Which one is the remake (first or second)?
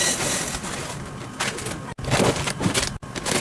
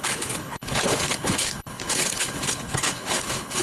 second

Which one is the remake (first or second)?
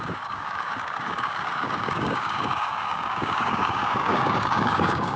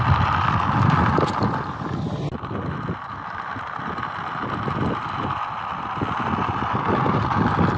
first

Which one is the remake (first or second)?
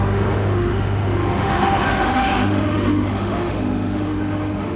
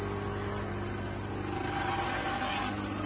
first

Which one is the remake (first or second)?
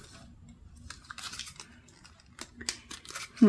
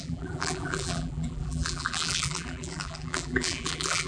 second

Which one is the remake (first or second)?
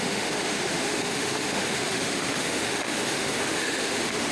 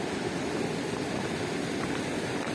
first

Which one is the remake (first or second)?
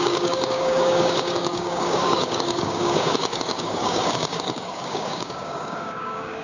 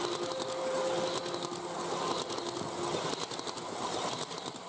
first